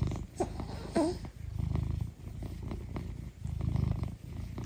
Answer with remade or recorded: recorded